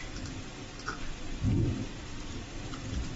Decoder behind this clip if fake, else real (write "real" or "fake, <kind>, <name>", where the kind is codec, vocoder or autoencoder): fake, vocoder, BigVGAN v2